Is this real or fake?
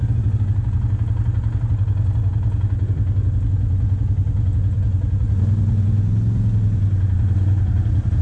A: real